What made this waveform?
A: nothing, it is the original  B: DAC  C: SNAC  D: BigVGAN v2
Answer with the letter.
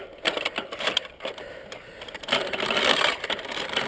D